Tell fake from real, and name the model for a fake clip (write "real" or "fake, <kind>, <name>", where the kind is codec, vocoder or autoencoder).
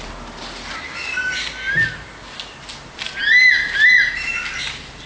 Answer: real